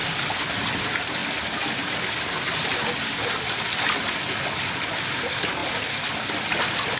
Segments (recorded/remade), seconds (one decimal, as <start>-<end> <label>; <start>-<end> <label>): 0.0-7.0 recorded